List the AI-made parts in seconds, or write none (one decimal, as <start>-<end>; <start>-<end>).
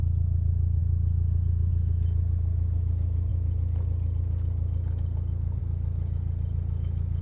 none